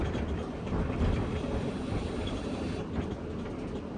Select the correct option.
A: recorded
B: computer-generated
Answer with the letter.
A